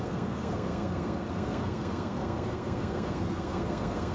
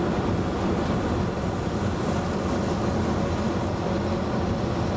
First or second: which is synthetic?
first